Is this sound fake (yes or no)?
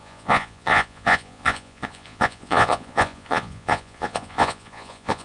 yes